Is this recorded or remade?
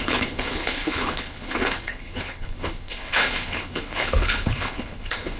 remade